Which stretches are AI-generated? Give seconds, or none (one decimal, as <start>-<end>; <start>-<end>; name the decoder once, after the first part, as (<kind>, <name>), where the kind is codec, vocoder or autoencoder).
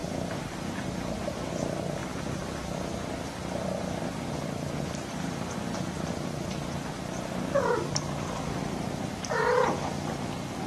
0.0-1.5 (vocoder, BigVGAN v2)